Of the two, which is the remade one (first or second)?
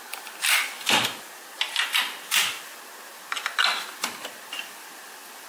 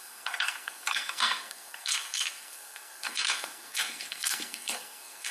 second